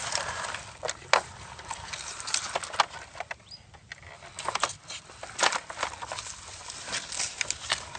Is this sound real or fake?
real